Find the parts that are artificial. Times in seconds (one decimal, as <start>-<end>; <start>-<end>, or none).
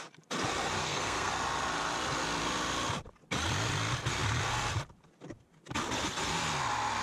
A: 0.8-1.3